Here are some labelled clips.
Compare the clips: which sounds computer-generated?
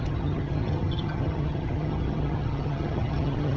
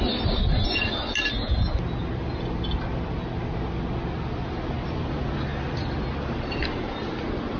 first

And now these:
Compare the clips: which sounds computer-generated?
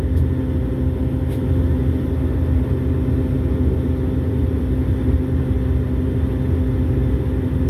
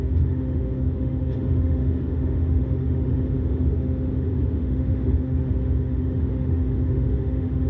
second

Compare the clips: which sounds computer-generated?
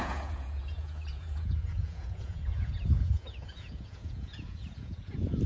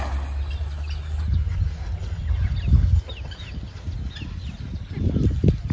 first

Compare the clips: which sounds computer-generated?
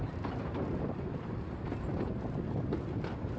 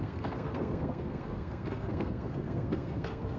second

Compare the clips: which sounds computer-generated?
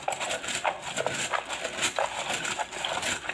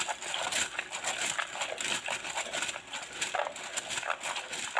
first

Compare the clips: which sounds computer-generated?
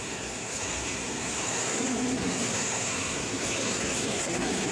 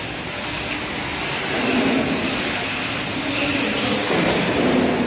first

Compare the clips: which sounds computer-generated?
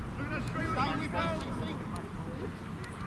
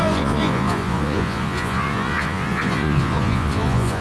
second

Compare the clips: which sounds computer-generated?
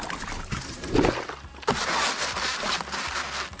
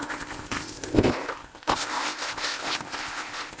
second